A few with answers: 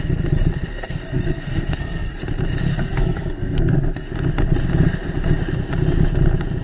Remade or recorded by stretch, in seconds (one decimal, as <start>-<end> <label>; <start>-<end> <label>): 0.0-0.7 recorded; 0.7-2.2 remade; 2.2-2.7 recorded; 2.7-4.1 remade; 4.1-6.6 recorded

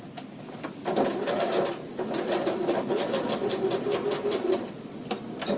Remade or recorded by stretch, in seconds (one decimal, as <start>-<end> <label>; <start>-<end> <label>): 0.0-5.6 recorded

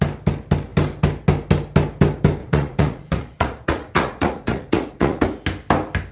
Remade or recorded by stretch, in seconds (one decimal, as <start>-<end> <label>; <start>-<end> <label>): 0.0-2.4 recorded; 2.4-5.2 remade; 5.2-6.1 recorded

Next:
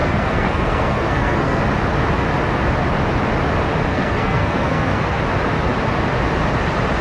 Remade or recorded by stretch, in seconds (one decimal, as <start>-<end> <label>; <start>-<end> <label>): 0.0-1.6 remade; 1.6-3.9 recorded; 3.9-5.2 remade; 5.2-7.0 recorded